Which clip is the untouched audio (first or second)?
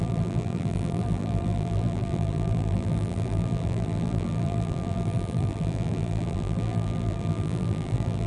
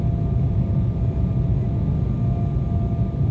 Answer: second